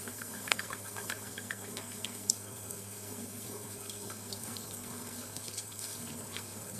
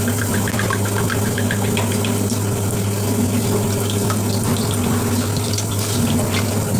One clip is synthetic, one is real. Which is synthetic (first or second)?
first